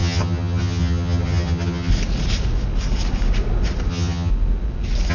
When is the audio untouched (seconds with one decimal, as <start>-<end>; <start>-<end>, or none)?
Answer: 1.9-3.9; 4.3-5.1